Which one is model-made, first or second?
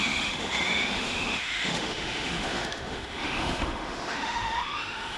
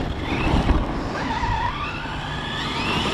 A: first